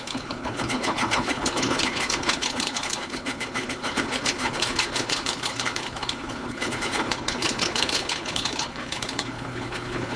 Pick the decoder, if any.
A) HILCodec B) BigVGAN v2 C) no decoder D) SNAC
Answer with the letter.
A